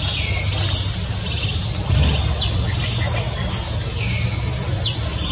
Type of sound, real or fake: real